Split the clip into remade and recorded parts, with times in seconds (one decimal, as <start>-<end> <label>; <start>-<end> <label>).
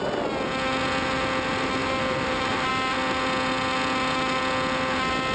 0.0-1.8 recorded; 1.8-2.7 remade; 2.7-5.3 recorded